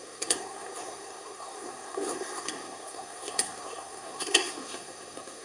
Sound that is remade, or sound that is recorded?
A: remade